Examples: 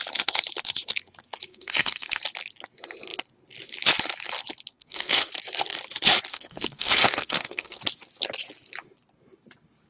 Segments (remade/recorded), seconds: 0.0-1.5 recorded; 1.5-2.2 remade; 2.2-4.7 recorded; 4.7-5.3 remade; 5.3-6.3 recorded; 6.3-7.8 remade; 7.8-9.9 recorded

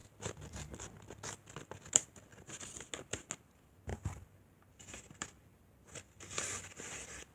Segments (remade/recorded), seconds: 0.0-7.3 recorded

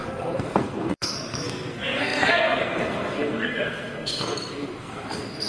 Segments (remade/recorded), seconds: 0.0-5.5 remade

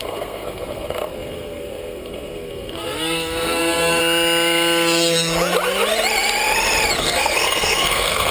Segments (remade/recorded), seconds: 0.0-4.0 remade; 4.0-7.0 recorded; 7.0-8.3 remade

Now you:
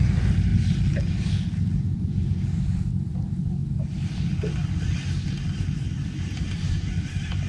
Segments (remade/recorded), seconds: 0.0-7.5 recorded

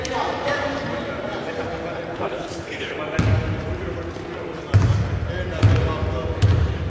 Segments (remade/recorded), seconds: 0.0-2.1 recorded; 2.1-3.0 remade; 3.0-6.9 recorded